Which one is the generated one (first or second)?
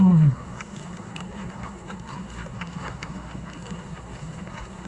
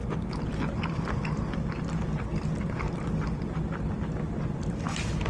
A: first